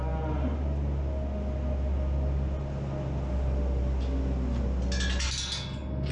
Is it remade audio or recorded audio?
recorded